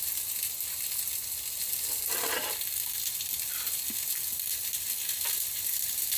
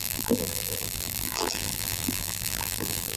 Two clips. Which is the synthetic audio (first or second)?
second